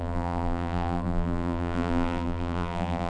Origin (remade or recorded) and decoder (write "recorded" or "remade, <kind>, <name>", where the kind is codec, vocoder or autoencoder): remade, vocoder, BigVGAN v2